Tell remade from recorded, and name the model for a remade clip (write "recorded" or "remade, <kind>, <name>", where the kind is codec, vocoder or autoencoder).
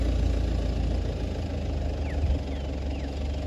recorded